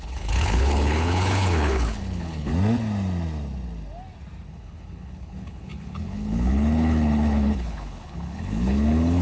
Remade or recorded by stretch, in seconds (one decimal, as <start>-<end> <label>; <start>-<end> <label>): 0.0-2.5 remade; 2.5-4.5 recorded; 4.5-9.2 remade